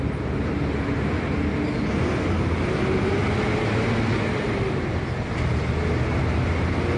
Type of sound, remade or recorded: recorded